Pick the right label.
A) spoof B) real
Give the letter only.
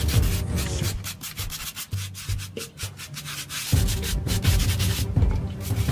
B